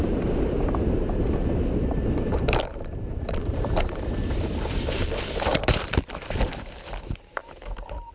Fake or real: fake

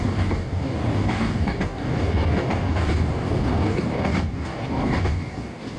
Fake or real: fake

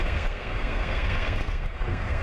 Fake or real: fake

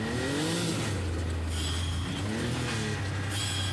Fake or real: real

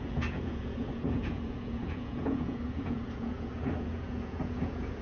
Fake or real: fake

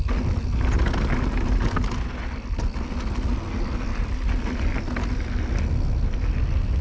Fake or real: real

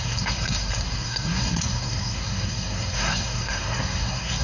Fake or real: fake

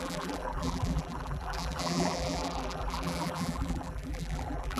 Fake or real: fake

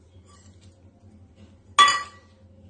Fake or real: real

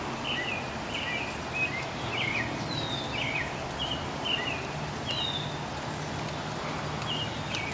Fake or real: real